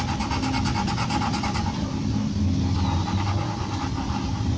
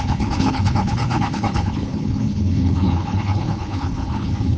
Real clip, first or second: first